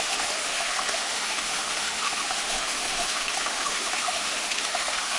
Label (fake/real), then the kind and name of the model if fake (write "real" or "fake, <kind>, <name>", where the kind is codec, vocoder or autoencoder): fake, autoencoder, DAC-VAE